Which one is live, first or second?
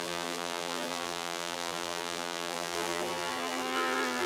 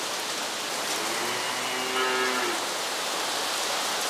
second